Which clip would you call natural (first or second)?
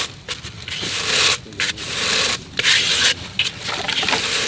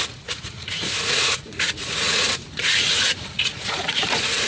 first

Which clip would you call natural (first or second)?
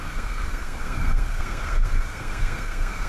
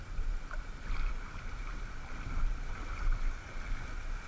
second